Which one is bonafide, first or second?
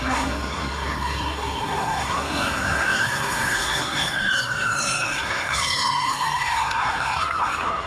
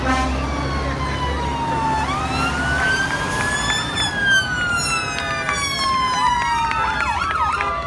second